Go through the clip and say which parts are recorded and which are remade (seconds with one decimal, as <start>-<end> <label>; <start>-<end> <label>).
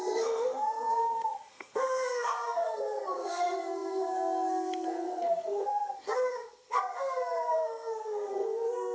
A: 0.0-8.9 remade